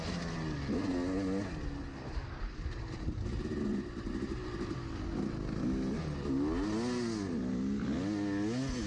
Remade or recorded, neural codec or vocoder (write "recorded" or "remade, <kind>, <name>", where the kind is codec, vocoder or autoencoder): recorded